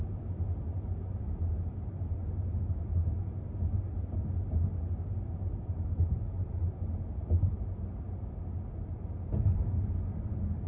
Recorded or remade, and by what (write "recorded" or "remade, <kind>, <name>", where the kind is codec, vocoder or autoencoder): recorded